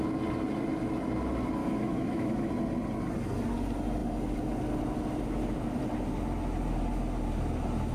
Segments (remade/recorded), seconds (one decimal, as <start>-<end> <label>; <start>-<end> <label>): 0.0-1.6 recorded; 1.6-2.5 remade; 2.5-7.9 recorded